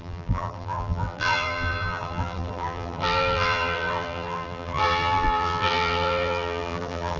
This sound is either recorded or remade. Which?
remade